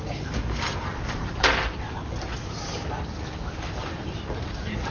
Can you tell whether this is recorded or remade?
recorded